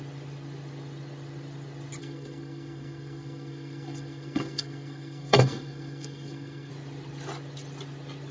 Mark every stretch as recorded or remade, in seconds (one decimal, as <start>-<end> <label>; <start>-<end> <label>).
0.0-2.0 recorded; 2.0-6.7 remade; 6.7-8.3 recorded